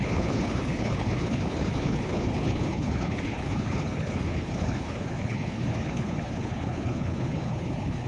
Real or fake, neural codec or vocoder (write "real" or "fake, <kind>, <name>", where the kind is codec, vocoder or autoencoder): fake, codec, HILCodec